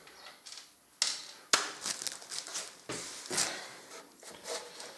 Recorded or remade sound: recorded